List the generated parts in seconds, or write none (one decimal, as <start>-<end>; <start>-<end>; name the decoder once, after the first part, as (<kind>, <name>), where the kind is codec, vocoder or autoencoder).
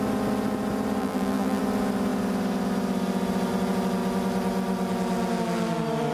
1.0-1.6 (vocoder, BigVGAN v2)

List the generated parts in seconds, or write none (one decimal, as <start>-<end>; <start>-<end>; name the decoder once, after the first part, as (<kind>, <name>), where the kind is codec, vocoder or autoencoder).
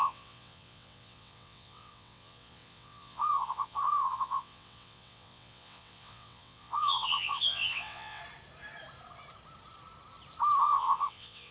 0.0-8.2 (vocoder, WaveNeXt); 10.6-11.5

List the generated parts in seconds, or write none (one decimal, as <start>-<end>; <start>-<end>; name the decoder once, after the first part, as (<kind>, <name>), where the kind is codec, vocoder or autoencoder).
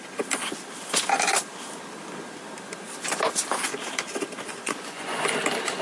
4.5-5.3 (vocoder, Vocos)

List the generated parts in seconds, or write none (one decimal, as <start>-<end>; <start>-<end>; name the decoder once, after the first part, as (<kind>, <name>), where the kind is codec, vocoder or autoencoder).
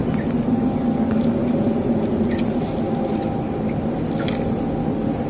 none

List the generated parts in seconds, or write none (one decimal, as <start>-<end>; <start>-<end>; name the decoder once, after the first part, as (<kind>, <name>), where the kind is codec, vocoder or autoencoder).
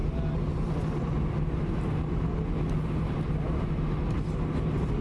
none